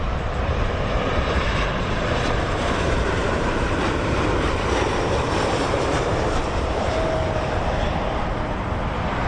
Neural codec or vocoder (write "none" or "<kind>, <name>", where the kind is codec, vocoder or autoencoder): vocoder, BigVGAN v2